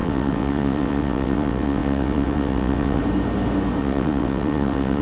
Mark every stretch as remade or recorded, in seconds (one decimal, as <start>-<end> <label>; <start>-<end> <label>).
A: 0.0-3.0 remade; 3.0-3.8 recorded; 3.8-5.0 remade